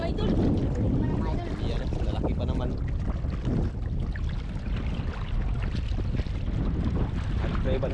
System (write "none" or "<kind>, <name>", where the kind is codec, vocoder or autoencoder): none